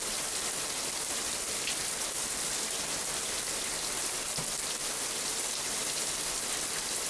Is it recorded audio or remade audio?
remade